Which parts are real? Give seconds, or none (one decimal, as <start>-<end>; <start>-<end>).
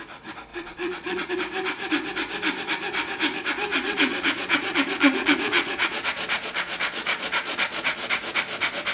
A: 0.0-0.5; 1.3-3.7; 8.1-8.9